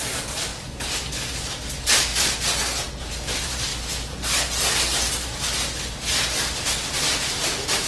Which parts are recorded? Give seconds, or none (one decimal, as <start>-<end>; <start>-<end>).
0.5-1.3; 2.1-2.8; 3.7-7.2